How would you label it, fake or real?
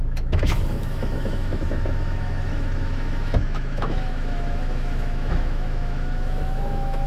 fake